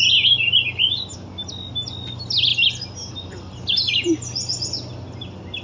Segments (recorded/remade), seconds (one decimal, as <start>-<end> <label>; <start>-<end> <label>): 0.0-5.6 recorded